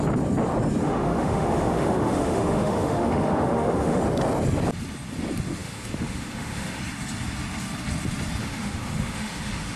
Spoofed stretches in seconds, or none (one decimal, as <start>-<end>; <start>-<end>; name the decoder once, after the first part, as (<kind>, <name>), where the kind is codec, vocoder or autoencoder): 0.8-4.0 (autoencoder, DAC-VAE); 5.6-6.8; 8.4-9.8